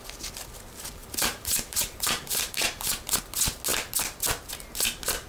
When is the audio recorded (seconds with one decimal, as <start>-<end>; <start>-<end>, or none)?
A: 0.0-1.0; 3.2-5.3